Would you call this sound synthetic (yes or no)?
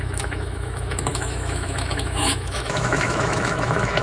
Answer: yes